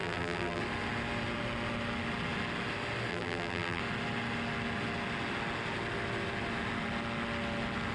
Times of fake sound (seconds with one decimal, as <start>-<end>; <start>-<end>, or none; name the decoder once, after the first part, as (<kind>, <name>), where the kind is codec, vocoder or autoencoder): 0.0-0.6 (vocoder, BigVGAN v2); 3.1-3.8